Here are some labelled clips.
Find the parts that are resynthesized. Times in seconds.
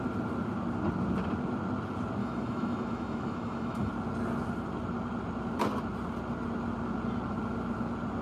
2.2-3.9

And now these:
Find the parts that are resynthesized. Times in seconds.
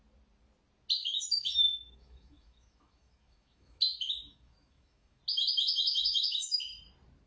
1.0-5.2; 5.9-6.6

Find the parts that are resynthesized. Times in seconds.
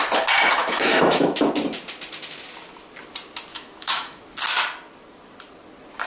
0.6-1.4; 3.5-4.2